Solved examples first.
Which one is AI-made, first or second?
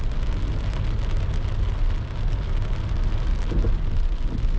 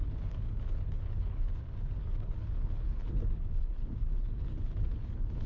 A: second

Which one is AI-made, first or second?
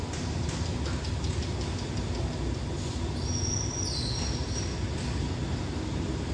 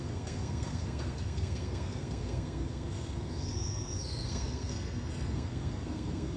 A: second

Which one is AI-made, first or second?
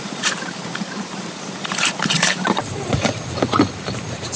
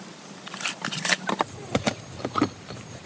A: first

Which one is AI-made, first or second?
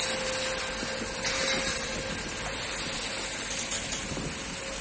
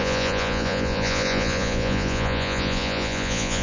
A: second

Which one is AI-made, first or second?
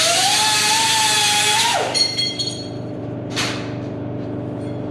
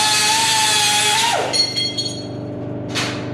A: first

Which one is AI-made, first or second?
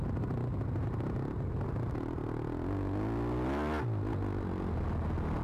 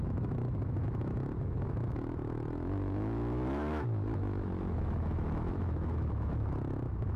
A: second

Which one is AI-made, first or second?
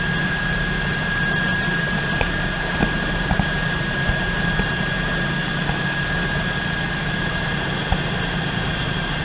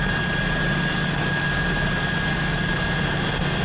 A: first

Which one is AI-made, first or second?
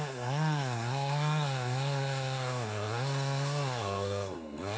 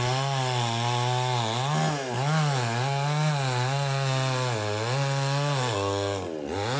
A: first